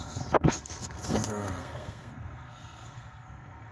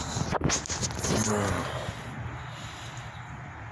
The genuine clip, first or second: second